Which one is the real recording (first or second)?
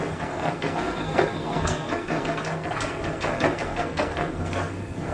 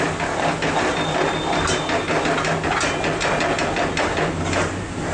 second